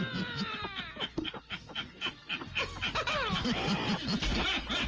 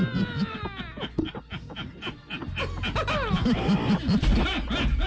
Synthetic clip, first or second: first